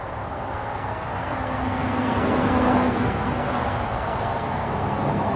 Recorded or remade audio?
remade